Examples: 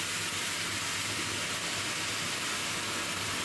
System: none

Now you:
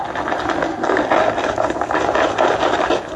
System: none